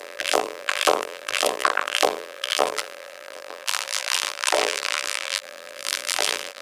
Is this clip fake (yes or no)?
yes